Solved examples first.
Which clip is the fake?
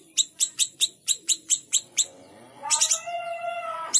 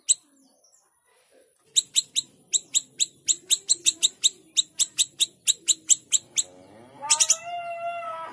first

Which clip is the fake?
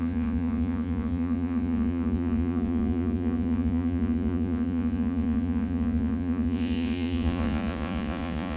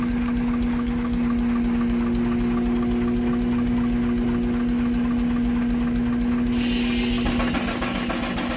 first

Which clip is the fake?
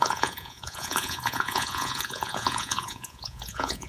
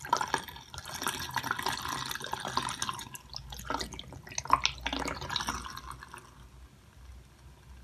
first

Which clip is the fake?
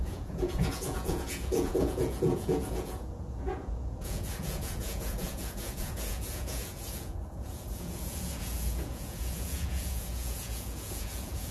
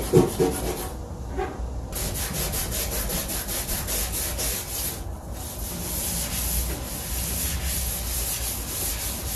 first